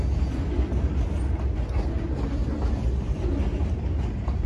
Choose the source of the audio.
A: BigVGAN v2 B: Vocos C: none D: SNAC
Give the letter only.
C